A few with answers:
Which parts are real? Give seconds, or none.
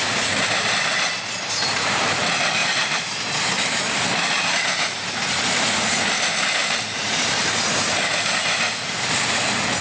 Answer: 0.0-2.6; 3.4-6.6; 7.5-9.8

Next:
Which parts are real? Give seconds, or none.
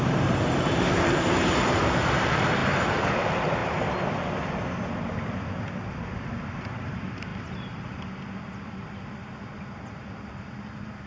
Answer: 2.6-3.2; 3.6-6.2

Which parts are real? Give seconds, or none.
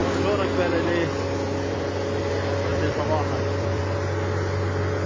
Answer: 0.0-2.7; 3.8-5.1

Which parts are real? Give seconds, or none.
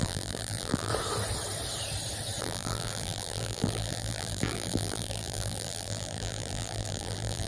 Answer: 0.9-2.4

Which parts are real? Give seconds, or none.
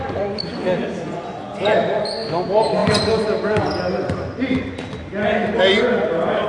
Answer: 0.0-2.8; 3.8-6.5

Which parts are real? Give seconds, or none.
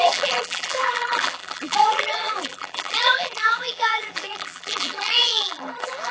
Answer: none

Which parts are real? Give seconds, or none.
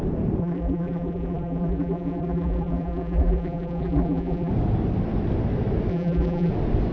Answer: 0.0-0.4; 4.5-5.9; 6.5-6.9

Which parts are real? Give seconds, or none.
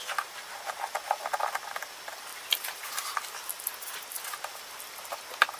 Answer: 0.0-2.3; 2.9-5.6